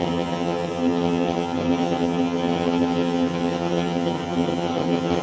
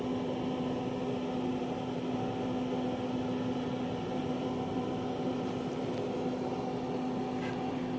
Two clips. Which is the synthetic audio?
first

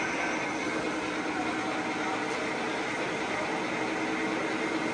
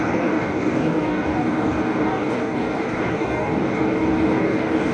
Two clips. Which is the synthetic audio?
second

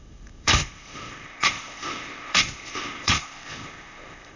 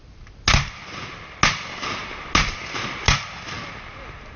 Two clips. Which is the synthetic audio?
first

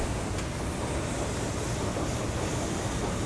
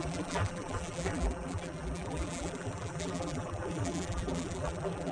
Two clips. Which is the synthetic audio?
second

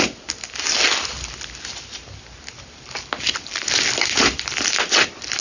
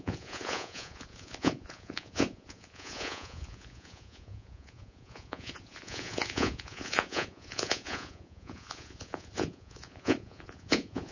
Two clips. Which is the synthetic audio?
second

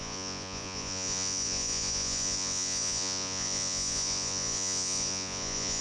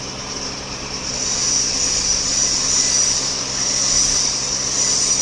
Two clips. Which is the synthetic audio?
first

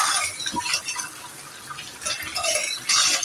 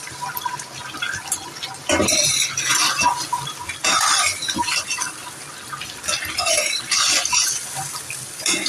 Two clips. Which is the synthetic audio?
second